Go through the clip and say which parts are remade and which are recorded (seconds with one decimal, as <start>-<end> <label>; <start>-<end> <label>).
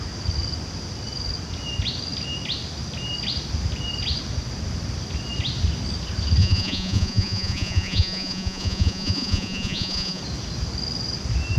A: 0.0-6.4 recorded; 6.4-10.2 remade; 10.2-11.6 recorded